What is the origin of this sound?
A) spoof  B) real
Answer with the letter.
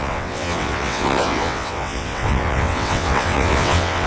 A